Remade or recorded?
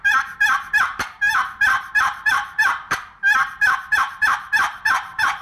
remade